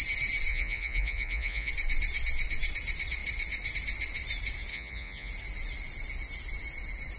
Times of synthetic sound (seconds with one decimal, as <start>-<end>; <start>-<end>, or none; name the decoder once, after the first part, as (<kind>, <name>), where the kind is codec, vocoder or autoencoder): 0.5-1.7 (vocoder, Vocos); 4.7-5.3